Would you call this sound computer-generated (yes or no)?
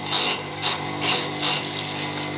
no